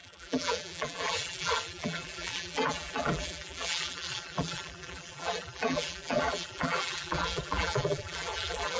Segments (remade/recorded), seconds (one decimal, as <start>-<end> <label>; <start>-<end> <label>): 0.0-8.8 remade